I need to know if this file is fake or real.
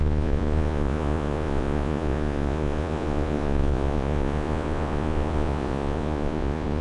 fake